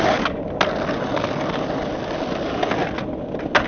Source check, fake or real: real